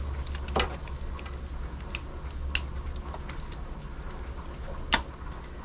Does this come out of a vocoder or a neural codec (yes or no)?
no